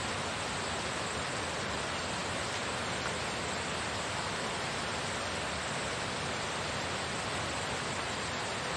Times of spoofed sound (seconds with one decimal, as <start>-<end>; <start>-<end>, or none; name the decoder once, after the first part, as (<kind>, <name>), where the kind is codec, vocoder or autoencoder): none